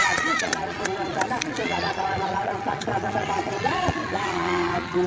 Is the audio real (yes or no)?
no